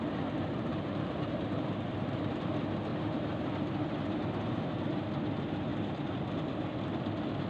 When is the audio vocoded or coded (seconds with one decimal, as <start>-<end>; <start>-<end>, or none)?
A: 0.7-2.1; 2.9-3.5